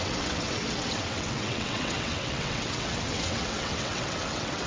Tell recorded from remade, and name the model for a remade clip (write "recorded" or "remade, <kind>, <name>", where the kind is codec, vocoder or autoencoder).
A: remade, vocoder, WaveNeXt